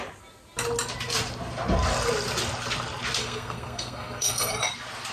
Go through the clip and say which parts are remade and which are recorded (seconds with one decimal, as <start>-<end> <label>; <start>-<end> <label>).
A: 0.0-3.2 recorded; 3.2-4.5 remade; 4.5-5.1 recorded